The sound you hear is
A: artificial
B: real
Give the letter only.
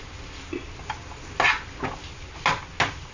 B